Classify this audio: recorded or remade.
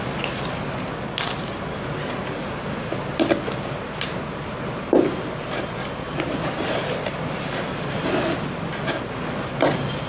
recorded